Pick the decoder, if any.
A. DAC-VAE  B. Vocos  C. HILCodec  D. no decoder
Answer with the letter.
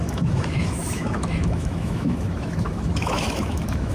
A